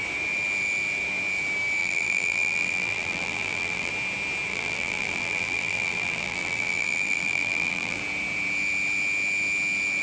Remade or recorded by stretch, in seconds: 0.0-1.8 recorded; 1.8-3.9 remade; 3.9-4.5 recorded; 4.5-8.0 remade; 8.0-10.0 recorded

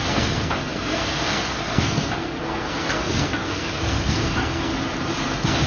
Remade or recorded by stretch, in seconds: 0.0-4.7 remade; 4.7-5.2 recorded; 5.2-5.7 remade